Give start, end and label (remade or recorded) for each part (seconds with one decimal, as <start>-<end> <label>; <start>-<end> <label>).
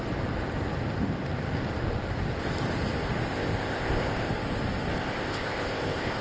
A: 0.0-3.3 recorded; 3.3-4.3 remade; 4.3-4.9 recorded; 4.9-6.2 remade